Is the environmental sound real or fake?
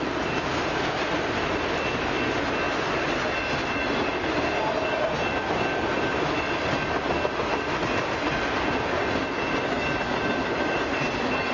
real